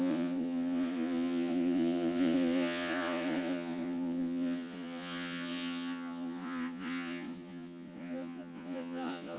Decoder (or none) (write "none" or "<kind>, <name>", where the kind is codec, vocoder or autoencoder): vocoder, Vocos